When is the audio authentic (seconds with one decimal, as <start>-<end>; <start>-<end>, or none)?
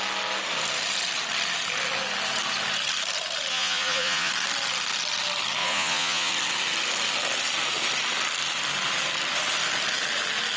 0.0-3.5; 4.3-5.6; 6.3-10.6